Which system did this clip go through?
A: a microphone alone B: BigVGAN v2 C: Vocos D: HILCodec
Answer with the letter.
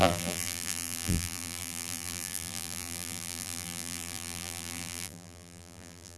B